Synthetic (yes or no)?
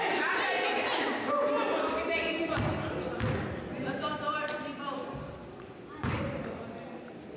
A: no